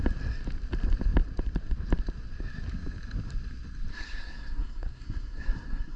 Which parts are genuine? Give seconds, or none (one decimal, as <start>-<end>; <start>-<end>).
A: 0.0-3.9